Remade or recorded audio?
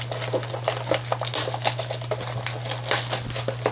recorded